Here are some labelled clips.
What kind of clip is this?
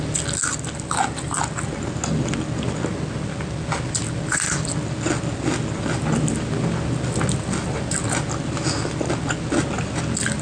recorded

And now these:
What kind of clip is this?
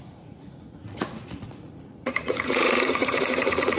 remade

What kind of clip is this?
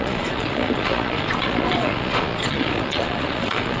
remade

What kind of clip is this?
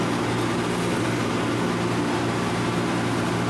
recorded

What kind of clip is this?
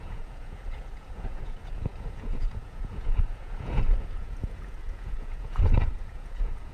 remade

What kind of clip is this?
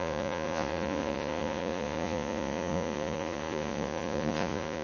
remade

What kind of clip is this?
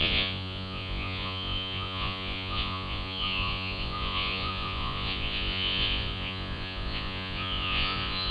remade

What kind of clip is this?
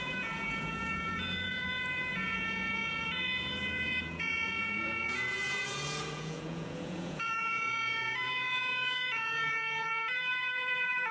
remade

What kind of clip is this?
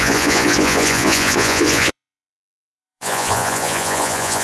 remade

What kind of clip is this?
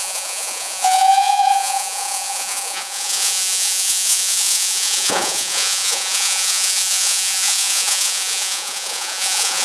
remade